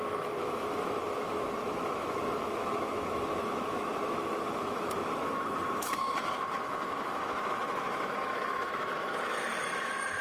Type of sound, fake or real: fake